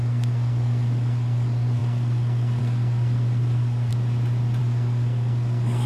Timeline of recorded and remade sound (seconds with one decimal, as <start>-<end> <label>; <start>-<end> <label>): 0.0-3.9 remade; 3.9-4.6 recorded; 4.6-5.9 remade